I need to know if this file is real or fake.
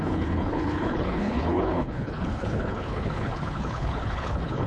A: fake